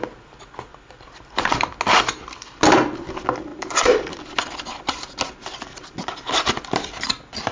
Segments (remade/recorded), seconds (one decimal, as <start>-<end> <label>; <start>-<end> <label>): 0.0-0.7 recorded; 0.7-1.7 remade; 1.7-3.5 recorded; 3.5-4.2 remade; 4.2-7.5 recorded